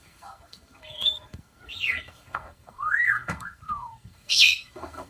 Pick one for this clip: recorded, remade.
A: remade